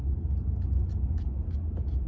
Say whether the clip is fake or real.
real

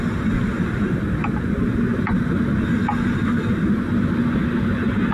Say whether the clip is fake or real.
real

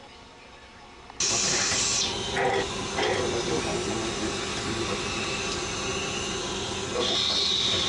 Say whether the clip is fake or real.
real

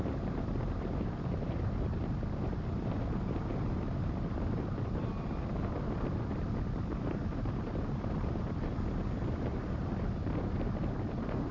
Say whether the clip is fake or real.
real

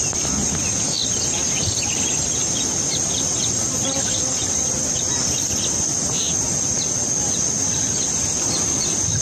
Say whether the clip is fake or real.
real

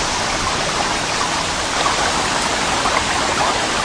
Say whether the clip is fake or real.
real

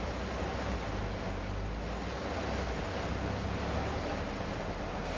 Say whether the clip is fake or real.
real